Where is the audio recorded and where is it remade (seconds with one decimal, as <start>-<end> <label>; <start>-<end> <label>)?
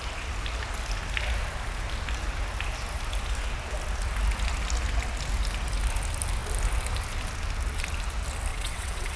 0.0-8.5 recorded; 8.5-9.2 remade